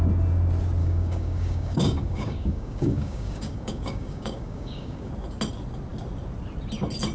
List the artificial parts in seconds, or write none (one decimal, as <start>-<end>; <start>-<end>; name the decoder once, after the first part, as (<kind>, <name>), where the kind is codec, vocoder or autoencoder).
0.8-5.1 (codec, DAC)